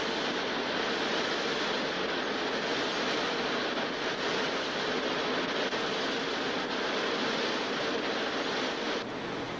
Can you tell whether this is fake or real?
real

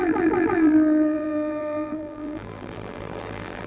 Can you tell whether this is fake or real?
fake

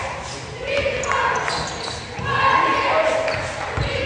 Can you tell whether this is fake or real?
real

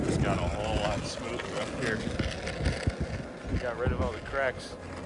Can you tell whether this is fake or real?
real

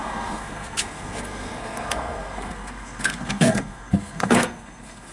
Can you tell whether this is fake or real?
fake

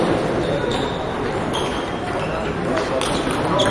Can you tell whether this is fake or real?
real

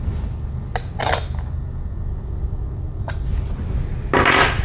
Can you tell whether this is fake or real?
real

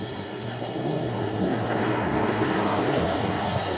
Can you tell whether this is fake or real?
fake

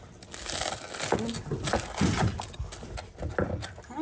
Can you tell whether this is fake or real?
real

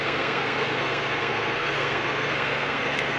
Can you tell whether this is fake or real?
fake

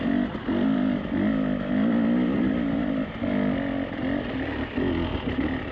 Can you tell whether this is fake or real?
real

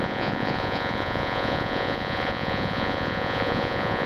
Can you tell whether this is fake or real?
fake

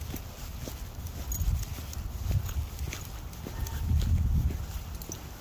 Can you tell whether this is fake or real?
real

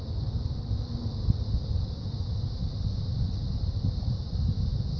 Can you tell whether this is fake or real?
real